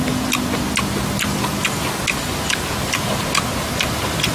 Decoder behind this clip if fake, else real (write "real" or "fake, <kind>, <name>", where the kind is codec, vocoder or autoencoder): real